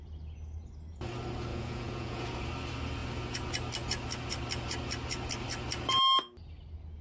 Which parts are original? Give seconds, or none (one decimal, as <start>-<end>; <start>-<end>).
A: 0.0-1.5; 2.4-7.0